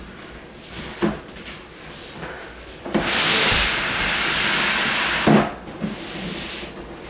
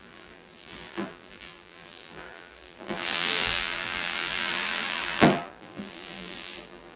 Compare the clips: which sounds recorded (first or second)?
first